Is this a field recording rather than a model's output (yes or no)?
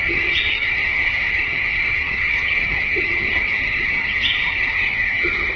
no